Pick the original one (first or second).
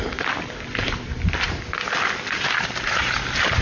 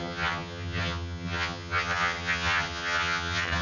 first